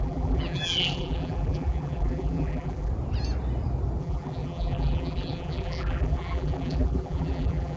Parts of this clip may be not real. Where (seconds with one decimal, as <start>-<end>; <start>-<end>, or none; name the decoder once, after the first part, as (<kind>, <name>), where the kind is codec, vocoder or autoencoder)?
0.0-2.9 (vocoder, BigVGAN v2); 4.0-7.8